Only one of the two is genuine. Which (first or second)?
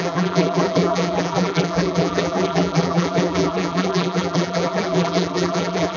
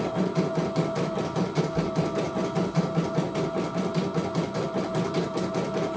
second